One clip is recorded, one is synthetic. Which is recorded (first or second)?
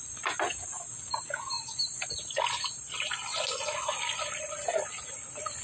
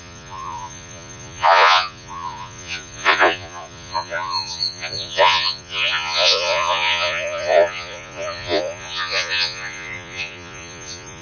first